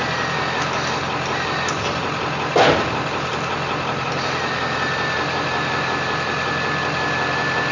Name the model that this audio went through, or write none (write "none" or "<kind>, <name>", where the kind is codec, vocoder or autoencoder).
none